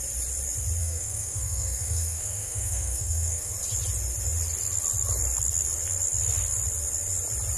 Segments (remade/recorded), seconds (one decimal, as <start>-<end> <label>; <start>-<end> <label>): 0.0-0.8 recorded; 0.8-3.5 remade; 3.5-7.6 recorded

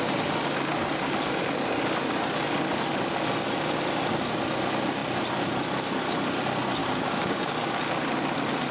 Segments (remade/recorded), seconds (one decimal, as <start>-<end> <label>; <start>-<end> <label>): 0.0-6.8 recorded; 6.8-7.5 remade; 7.5-8.7 recorded

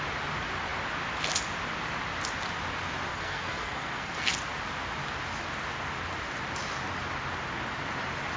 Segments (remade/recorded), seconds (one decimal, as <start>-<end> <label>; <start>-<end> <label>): 0.0-3.1 recorded; 3.1-4.3 remade; 4.3-8.4 recorded

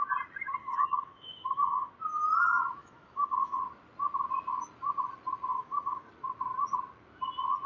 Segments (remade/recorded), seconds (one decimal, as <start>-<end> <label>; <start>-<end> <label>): 0.0-0.6 recorded; 0.6-1.9 remade; 1.9-2.8 recorded; 2.8-3.6 remade; 3.6-5.5 recorded; 5.5-6.1 remade; 6.1-7.7 recorded

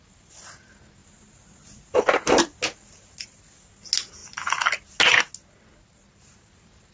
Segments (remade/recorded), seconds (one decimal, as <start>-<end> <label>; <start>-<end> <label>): 0.0-6.9 recorded